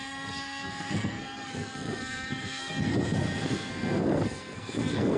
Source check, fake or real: fake